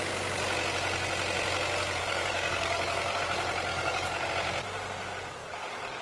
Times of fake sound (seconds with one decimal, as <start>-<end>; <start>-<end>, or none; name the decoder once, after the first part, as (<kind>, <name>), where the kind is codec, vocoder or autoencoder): 2.0-3.2 (codec, DAC); 3.7-4.3; 5.4-6.0

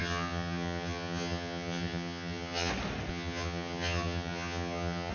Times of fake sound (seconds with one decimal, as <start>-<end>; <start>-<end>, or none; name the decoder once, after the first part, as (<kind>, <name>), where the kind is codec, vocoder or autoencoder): 0.0-2.7 (vocoder, HiFi-GAN); 3.1-5.1

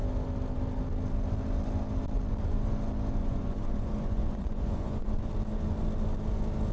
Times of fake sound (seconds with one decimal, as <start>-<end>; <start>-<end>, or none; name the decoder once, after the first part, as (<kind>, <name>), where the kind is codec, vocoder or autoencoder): 3.2-5.3 (vocoder, Vocos)

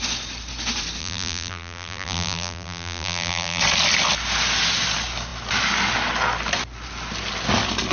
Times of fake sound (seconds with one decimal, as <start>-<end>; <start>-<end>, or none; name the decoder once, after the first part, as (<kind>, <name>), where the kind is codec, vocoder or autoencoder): 1.0-3.6 (vocoder, BigVGAN v2)